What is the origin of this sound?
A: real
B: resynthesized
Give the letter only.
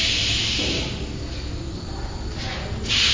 A